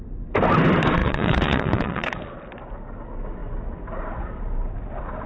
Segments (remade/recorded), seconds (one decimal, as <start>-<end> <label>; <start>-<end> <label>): 0.0-1.0 recorded; 1.0-2.1 remade; 2.1-5.3 recorded